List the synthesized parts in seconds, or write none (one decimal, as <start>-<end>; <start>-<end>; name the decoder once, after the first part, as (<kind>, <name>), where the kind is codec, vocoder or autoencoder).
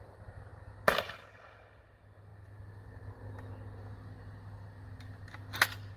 none